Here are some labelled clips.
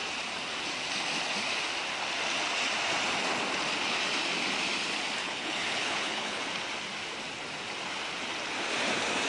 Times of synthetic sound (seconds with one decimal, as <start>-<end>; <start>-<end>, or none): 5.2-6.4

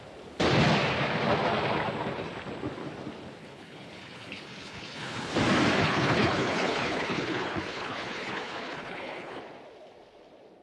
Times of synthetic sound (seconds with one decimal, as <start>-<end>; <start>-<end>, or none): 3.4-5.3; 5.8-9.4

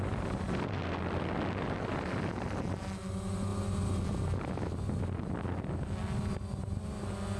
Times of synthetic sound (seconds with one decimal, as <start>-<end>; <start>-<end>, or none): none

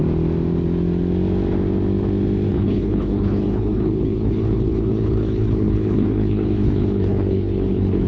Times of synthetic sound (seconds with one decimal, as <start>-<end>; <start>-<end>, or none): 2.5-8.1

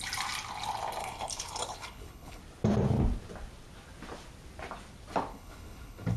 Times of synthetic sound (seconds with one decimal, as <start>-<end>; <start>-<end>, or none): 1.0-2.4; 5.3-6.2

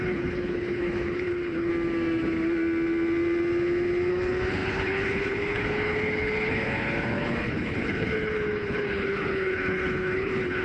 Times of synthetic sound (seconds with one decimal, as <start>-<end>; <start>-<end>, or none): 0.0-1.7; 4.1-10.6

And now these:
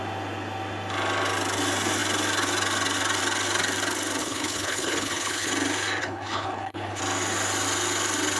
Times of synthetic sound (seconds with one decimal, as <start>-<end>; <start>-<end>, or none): 4.2-5.5; 6.0-7.0

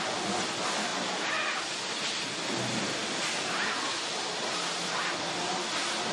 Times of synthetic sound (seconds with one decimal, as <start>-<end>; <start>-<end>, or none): none